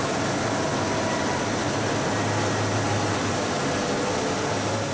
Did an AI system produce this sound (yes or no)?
no